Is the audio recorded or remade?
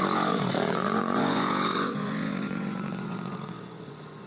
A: remade